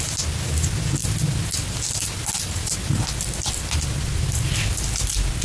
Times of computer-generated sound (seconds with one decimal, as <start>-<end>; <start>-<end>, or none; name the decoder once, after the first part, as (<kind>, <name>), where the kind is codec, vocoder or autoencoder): none